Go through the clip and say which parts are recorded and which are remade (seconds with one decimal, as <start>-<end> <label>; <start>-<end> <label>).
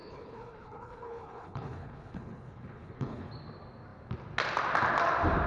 0.0-3.3 remade; 3.3-5.5 recorded